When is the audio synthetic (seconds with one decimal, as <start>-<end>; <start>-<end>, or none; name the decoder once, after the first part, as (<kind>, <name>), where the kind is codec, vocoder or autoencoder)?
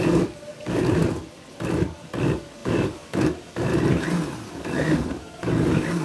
0.0-1.0 (codec, DAC); 2.2-3.7; 4.5-6.0